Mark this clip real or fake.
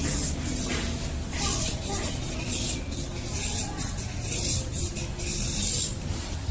real